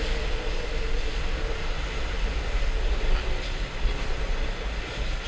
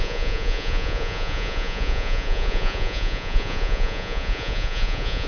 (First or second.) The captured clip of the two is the first